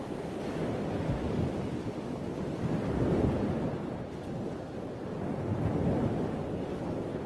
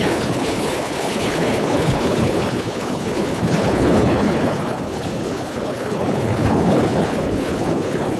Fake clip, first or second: second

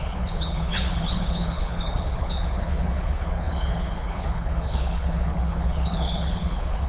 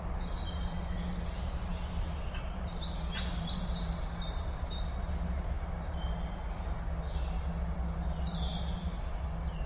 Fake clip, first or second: first